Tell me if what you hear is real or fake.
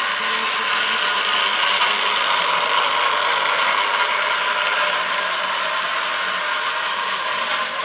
real